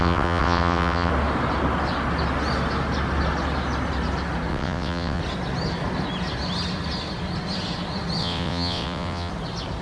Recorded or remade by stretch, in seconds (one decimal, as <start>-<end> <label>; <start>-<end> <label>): 0.0-1.1 remade; 1.1-4.5 recorded; 4.5-5.2 remade; 5.2-8.2 recorded; 8.2-9.3 remade; 9.3-9.8 recorded